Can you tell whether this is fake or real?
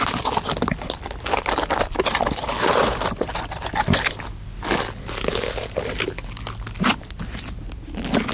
real